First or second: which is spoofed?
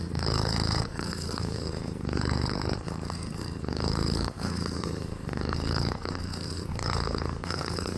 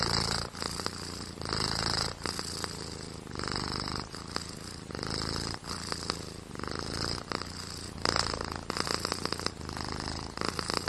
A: first